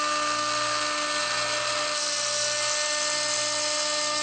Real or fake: real